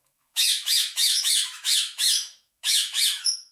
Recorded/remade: remade